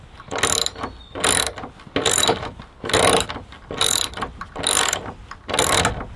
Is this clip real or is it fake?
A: real